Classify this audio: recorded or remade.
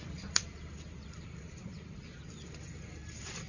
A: remade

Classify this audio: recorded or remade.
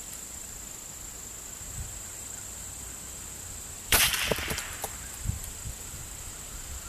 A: remade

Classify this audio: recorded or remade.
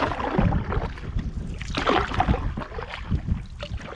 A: recorded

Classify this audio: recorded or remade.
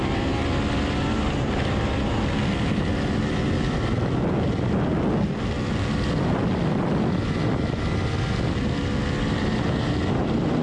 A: recorded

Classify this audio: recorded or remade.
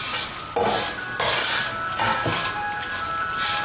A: remade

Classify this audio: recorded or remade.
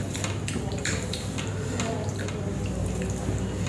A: recorded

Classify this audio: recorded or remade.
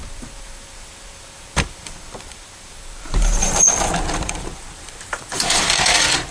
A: remade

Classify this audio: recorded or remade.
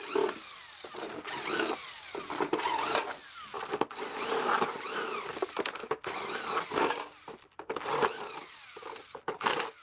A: recorded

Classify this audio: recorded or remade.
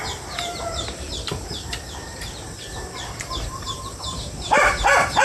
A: remade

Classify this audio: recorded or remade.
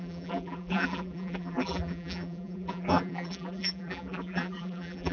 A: remade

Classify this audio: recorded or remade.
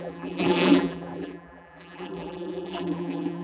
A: remade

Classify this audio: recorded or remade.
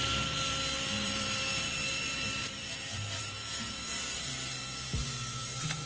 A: remade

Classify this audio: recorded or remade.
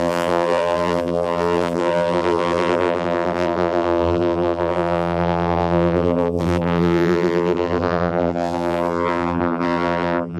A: remade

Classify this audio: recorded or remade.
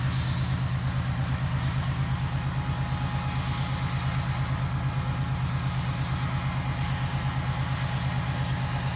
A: recorded